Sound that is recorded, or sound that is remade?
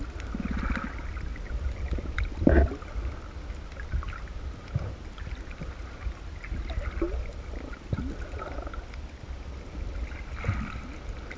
recorded